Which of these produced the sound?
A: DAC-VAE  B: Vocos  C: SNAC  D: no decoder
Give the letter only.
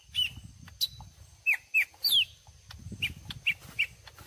D